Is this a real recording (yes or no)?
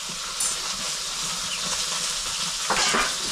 yes